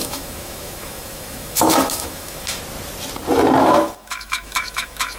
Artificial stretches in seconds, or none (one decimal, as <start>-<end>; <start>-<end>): 0.0-2.6; 3.6-5.2